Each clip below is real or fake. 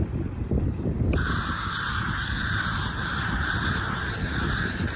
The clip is real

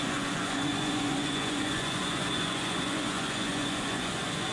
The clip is fake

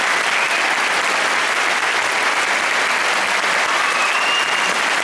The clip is real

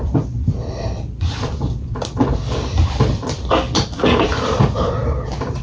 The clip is fake